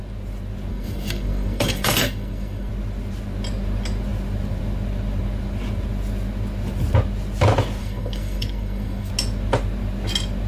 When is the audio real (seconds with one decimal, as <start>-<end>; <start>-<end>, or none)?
0.0-0.7; 2.7-7.8; 9.1-10.5